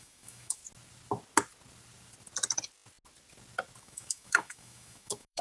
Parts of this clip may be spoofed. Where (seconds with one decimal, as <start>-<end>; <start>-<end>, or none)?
0.0-0.6; 3.8-5.4